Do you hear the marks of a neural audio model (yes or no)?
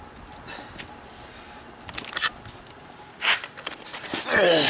no